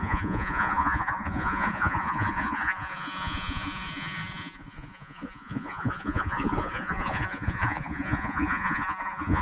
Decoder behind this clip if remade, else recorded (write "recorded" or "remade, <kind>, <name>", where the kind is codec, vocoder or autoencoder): remade, vocoder, Vocos